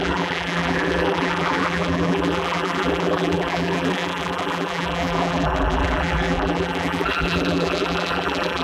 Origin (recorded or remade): remade